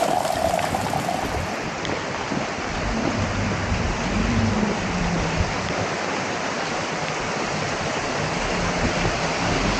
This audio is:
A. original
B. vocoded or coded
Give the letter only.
B